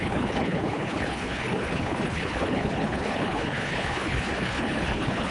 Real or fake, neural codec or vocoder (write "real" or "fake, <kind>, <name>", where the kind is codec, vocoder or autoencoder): fake, codec, HILCodec